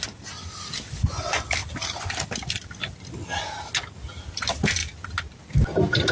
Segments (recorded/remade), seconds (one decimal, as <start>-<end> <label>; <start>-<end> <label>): 0.0-6.1 recorded